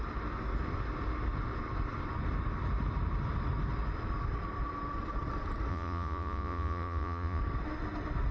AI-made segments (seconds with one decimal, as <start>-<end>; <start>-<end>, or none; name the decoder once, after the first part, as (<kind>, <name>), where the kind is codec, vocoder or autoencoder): 5.7-7.4 (vocoder, Vocos)